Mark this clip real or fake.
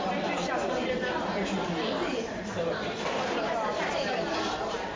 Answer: fake